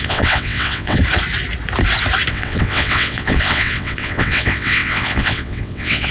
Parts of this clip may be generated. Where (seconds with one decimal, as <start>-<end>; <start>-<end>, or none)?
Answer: 0.0-1.0; 2.3-6.1